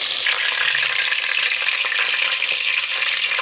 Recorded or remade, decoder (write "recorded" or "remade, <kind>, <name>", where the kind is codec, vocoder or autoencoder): recorded